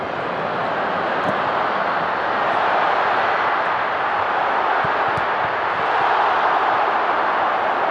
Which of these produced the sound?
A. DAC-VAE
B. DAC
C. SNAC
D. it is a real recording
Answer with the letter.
D